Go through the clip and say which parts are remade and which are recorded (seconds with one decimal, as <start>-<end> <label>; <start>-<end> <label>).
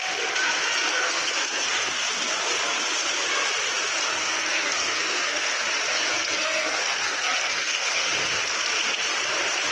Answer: 0.0-0.9 recorded; 0.9-1.7 remade; 1.7-4.1 recorded; 4.1-5.6 remade; 5.6-6.1 recorded; 6.1-8.1 remade; 8.1-9.7 recorded